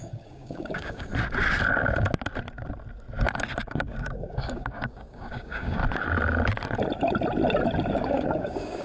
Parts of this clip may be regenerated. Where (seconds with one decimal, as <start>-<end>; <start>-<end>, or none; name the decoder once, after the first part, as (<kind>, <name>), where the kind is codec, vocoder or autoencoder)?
0.0-1.1 (codec, DAC); 3.6-5.8; 7.9-8.8